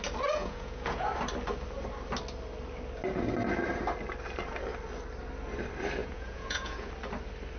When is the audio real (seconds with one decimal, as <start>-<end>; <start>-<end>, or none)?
0.0-0.4; 1.1-6.0; 6.9-7.6